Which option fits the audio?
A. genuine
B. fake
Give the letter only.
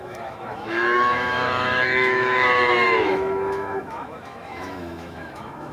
B